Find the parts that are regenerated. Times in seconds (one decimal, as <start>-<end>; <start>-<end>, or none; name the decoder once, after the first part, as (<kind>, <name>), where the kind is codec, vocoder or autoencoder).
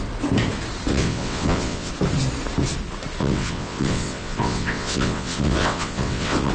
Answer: 0.9-1.9 (vocoder, WaveNeXt); 3.2-6.5